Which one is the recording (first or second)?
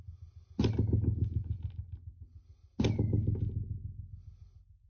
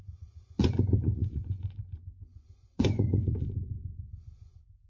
first